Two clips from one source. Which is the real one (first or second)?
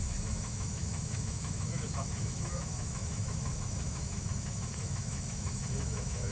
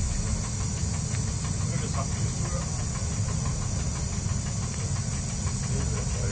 second